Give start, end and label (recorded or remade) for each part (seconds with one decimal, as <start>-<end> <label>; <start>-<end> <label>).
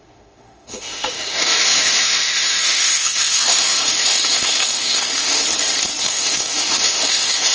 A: 0.0-5.4 remade; 5.4-6.0 recorded; 6.0-7.5 remade